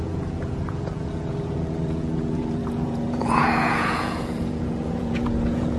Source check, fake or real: fake